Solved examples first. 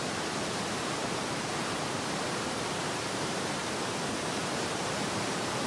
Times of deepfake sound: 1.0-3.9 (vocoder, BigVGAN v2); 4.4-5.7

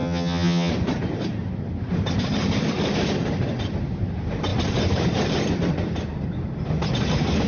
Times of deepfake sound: 0.0-0.7 (vocoder, HiFi-GAN)

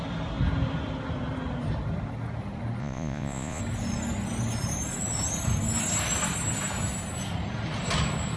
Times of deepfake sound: 2.8-3.6 (vocoder, Vocos)

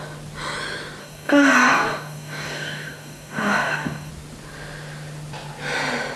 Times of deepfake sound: 1.0-4.1 (codec, DAC)